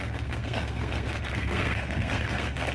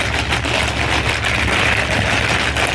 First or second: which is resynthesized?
first